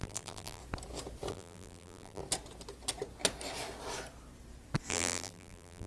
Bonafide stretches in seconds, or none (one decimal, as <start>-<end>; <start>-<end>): 0.6-1.3; 2.2-4.9